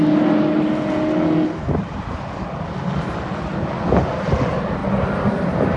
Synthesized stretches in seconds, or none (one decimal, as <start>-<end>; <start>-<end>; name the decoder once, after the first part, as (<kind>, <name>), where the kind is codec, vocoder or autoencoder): none